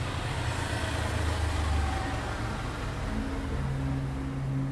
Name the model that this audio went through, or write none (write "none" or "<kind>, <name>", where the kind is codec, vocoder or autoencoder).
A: none